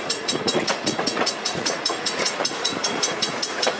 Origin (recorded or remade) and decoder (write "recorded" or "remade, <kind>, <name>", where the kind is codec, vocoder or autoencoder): remade, vocoder, Vocos